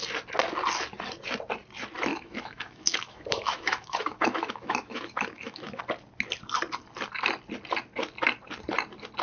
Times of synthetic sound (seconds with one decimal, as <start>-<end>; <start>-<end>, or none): 2.1-5.8